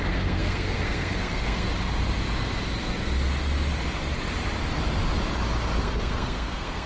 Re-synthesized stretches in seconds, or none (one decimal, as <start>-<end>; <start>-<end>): 0.0-1.7; 5.8-6.9